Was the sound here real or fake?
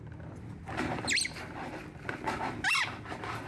real